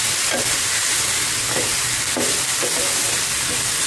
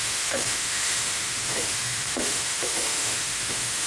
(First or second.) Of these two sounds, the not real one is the second